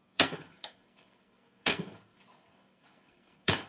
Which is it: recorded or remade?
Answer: remade